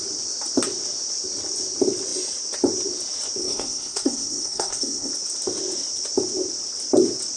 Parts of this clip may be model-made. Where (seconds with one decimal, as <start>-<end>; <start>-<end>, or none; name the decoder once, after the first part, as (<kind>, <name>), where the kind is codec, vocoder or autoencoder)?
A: 3.4-5.1 (codec, SNAC)